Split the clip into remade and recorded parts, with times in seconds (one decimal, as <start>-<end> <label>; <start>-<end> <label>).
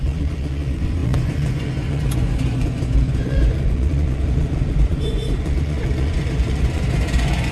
0.0-7.5 remade